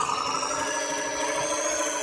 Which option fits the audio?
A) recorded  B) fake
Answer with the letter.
A